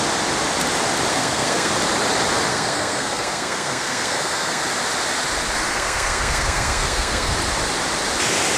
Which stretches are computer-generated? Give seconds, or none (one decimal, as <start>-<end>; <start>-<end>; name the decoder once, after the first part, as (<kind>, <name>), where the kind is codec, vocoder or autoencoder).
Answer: 1.1-1.7 (codec, SNAC); 2.5-4.6; 5.7-7.3